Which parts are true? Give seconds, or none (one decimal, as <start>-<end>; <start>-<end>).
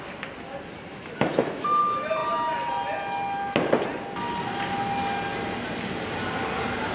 0.0-0.9; 1.8-6.9